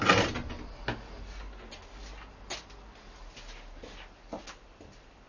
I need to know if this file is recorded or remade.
recorded